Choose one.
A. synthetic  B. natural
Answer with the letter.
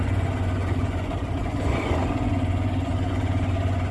A